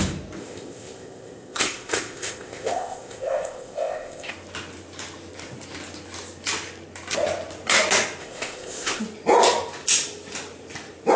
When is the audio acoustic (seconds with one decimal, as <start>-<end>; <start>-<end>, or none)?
0.0-0.4; 4.3-8.2; 9.0-11.2